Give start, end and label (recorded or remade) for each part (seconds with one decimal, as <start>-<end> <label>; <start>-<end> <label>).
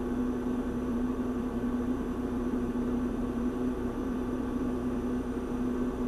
0.0-0.9 recorded; 0.9-4.6 remade; 4.6-6.1 recorded